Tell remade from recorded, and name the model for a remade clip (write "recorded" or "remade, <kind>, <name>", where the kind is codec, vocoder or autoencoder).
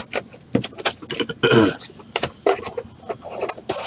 recorded